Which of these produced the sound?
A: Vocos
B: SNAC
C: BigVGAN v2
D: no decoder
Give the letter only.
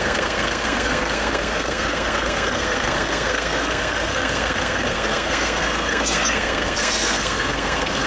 B